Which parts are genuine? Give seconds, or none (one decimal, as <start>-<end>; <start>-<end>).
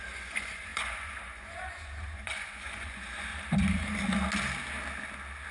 3.3-5.5